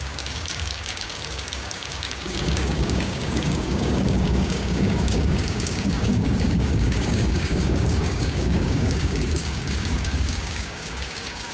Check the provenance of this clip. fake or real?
fake